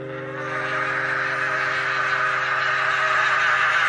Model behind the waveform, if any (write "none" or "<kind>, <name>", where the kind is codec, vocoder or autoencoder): none